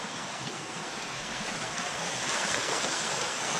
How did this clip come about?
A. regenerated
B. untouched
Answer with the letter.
A